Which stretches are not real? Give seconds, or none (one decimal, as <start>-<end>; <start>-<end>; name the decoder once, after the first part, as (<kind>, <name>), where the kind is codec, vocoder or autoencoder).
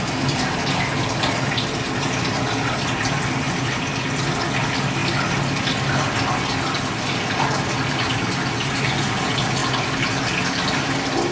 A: none